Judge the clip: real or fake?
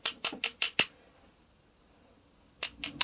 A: real